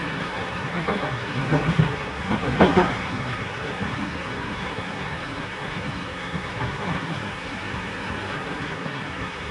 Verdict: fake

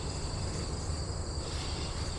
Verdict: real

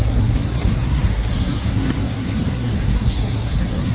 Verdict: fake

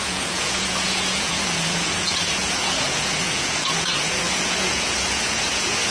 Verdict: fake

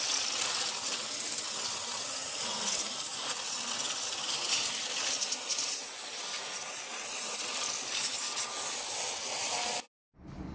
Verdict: real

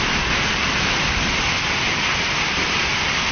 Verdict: real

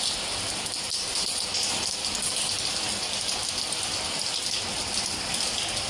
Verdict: real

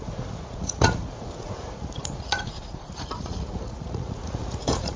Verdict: fake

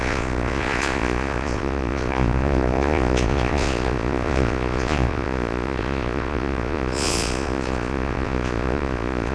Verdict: fake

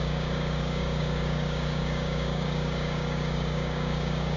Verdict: fake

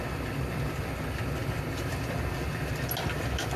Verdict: real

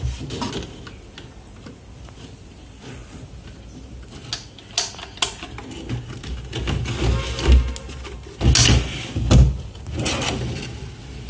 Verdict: real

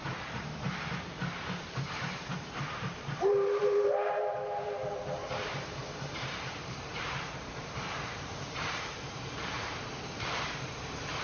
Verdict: fake